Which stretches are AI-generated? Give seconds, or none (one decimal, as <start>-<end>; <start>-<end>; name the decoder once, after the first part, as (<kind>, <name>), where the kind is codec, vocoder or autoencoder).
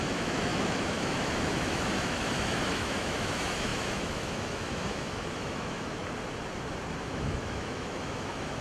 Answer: 0.0-6.0 (autoencoder, DAC-VAE); 6.9-8.6